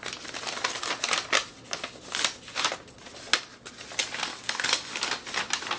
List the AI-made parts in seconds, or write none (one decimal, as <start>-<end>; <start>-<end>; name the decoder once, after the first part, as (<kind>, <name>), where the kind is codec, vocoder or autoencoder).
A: 4.3-5.1 (codec, DAC)